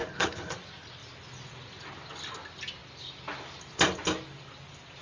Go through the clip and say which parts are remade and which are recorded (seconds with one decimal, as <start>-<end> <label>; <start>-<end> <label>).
0.0-0.5 remade; 0.5-5.0 recorded

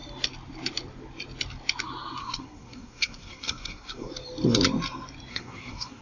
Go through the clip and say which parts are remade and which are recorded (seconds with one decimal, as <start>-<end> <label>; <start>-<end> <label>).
0.0-2.2 recorded; 2.2-4.1 remade; 4.1-5.3 recorded; 5.3-6.0 remade

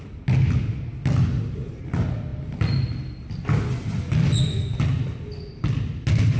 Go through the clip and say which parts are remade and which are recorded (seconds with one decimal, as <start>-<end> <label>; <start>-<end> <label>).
0.0-6.4 recorded

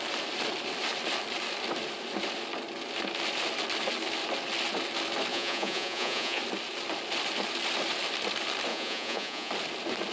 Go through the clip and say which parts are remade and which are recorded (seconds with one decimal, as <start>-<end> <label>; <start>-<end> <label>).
0.0-5.3 recorded; 5.3-6.4 remade; 6.4-8.7 recorded; 8.7-9.5 remade; 9.5-10.1 recorded

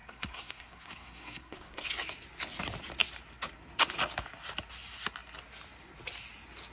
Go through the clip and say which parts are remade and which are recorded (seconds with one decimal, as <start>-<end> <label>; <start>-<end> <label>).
0.0-1.9 remade; 1.9-6.7 recorded

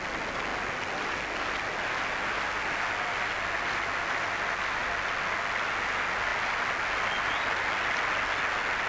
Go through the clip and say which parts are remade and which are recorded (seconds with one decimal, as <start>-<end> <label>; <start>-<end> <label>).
0.0-8.9 recorded

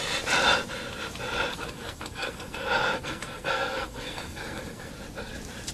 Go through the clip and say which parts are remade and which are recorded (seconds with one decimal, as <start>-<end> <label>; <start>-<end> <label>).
0.0-1.5 recorded; 1.5-4.9 remade; 4.9-5.7 recorded